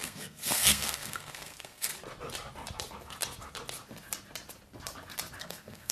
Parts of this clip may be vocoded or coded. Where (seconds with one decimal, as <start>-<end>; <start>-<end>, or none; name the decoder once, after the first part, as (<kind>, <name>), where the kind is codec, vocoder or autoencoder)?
0.0-1.9 (codec, SNAC); 5.4-5.9